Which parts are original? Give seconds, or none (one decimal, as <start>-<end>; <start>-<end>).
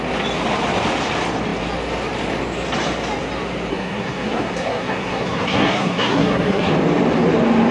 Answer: 0.0-3.7; 6.7-7.7